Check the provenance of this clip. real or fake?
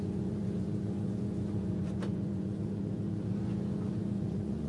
fake